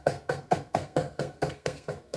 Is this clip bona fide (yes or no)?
no